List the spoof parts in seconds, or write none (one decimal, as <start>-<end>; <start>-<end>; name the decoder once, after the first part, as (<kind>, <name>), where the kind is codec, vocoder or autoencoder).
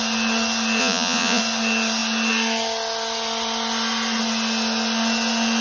0.8-1.4 (vocoder, Vocos)